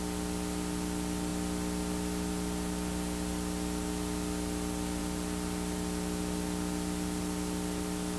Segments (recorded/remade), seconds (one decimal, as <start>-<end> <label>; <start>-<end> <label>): 0.0-8.2 recorded